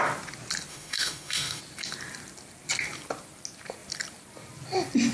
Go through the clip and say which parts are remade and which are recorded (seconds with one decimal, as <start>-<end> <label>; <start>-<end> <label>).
0.0-0.7 recorded; 0.7-1.6 remade; 1.6-5.1 recorded